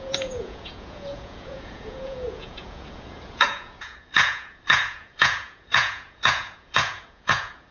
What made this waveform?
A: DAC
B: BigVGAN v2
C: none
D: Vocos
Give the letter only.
D